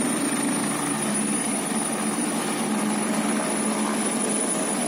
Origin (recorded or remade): recorded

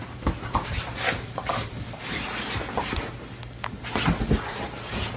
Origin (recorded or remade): recorded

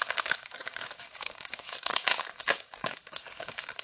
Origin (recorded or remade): remade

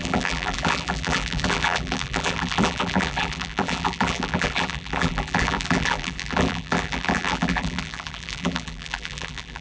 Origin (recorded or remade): remade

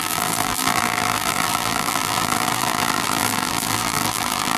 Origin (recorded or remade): remade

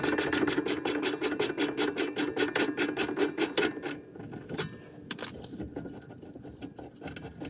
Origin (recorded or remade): recorded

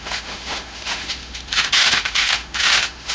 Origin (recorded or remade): remade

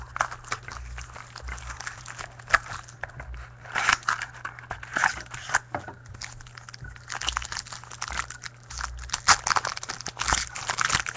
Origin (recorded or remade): recorded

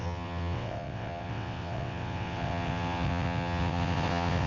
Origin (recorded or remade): remade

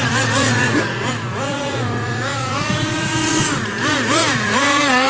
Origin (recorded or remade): remade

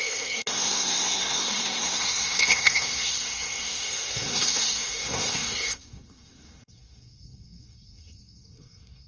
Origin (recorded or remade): remade